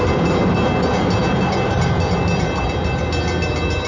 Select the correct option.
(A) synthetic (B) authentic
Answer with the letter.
B